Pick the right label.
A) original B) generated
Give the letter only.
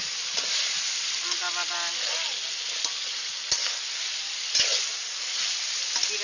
A